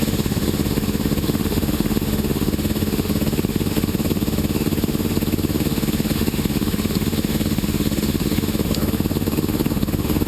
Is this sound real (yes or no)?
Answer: no